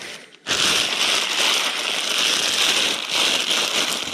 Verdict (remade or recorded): recorded